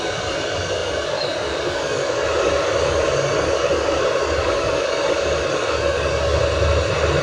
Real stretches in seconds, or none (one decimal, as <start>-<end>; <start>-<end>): 6.4-7.2